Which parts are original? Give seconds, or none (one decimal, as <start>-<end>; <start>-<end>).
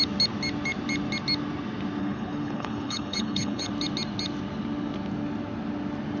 0.0-2.0; 3.7-6.2